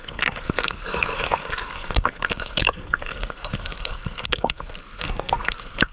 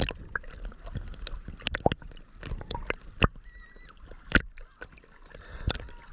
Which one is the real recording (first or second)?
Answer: second